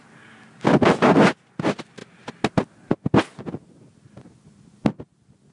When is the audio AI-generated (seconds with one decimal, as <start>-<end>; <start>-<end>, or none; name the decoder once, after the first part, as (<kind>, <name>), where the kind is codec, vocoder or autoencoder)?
none